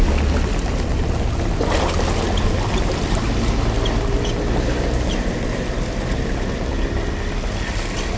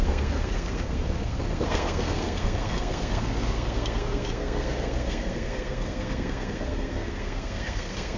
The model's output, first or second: second